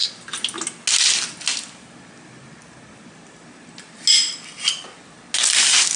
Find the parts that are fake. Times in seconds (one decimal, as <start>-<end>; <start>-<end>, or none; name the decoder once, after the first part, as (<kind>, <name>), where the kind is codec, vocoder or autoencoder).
none

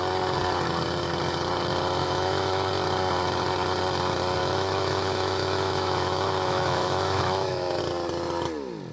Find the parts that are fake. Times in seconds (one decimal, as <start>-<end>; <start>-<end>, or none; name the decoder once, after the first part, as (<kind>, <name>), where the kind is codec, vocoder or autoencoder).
2.0-2.7 (autoencoder, DAC-VAE); 4.4-7.8

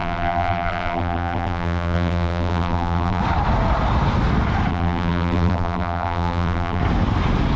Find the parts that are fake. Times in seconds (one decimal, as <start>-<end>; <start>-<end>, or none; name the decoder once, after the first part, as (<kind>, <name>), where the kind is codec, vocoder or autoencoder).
0.0-3.2 (vocoder, BigVGAN v2); 4.7-6.8

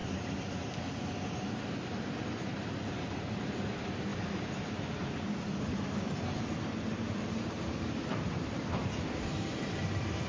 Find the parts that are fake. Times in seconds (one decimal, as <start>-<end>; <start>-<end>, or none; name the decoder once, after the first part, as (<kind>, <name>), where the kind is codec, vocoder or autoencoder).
0.0-10.3 (vocoder, BigVGAN v2)

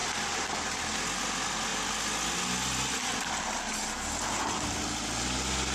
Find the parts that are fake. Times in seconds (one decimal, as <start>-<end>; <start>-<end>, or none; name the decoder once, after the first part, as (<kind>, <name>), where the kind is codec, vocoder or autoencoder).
none

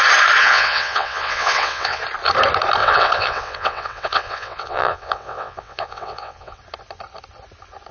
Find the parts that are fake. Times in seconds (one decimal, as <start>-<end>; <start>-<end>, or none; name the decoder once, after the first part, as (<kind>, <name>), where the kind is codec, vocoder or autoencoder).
0.4-2.0 (vocoder, WaveNeXt); 2.8-6.6